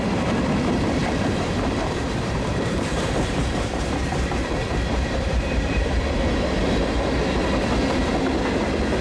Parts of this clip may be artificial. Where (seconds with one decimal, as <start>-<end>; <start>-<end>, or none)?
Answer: 1.0-6.0